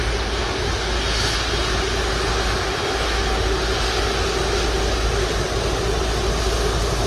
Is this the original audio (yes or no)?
yes